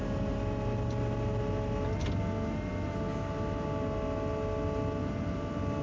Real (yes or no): yes